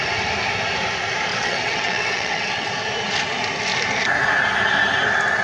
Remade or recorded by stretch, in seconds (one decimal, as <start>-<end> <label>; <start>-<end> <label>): 0.0-1.3 recorded; 1.3-2.7 remade; 2.7-5.4 recorded